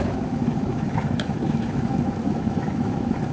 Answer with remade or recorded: remade